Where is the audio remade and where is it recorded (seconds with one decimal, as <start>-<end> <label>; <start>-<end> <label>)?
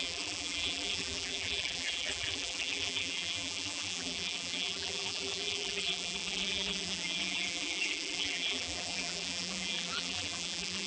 0.0-10.9 remade